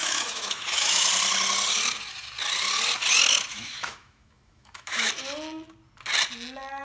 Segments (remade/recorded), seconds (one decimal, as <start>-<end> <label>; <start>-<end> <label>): 0.0-1.1 remade; 1.1-3.5 recorded; 3.5-5.1 remade; 5.1-6.8 recorded